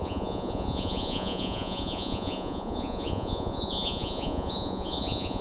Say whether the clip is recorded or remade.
remade